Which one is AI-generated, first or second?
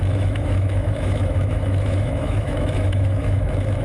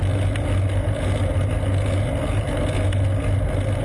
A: first